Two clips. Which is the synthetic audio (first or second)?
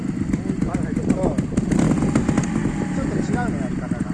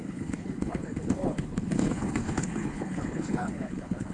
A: second